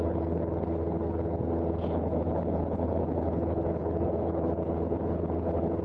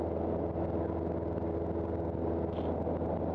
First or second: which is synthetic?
first